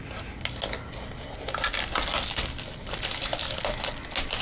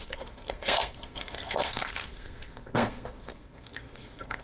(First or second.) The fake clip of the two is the second